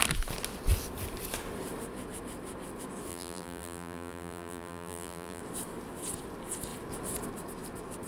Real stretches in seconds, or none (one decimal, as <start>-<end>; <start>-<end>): 0.0-3.1; 5.4-8.1